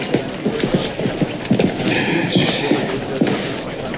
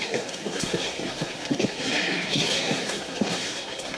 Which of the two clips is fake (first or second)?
second